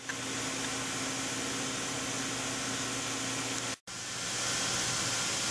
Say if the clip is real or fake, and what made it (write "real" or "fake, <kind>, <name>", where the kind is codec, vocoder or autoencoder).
real